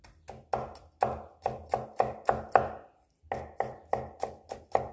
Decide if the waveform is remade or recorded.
recorded